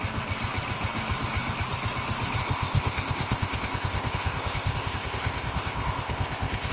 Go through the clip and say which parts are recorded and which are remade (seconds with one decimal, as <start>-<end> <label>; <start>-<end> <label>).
0.0-2.4 recorded; 2.4-6.7 remade